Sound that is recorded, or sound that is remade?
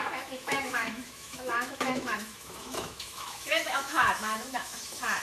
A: remade